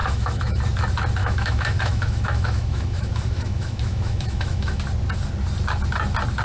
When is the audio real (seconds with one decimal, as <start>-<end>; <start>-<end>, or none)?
0.6-1.2; 4.8-6.4